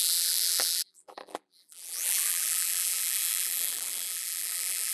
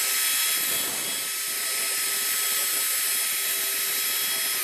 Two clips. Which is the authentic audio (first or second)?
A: second